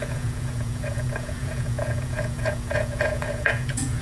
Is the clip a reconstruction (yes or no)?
yes